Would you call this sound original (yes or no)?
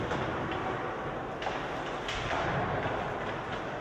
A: yes